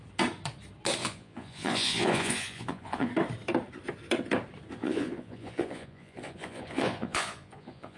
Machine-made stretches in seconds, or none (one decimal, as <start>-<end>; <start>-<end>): 1.0-3.1; 4.8-8.0